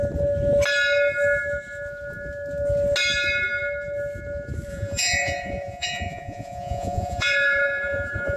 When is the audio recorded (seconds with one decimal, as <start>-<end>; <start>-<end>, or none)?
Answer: 0.0-4.7